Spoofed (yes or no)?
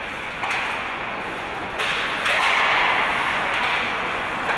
yes